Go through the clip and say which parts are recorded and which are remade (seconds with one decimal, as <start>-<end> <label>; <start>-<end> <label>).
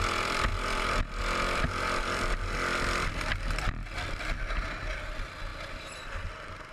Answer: 0.0-6.7 recorded